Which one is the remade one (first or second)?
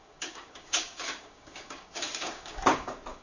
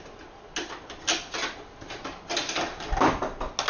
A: first